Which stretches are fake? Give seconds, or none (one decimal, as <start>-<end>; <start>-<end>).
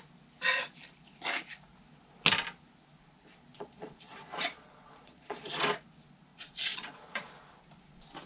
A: 3.5-5.5; 6.3-7.3